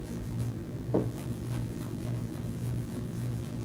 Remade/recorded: remade